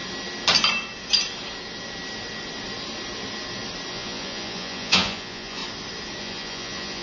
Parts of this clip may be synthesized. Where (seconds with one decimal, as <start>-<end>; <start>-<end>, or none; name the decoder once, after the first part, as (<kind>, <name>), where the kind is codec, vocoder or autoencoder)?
3.9-5.6 (vocoder, Vocos); 6.2-7.0